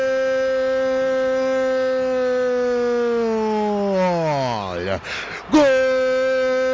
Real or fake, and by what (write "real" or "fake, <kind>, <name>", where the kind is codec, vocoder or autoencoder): real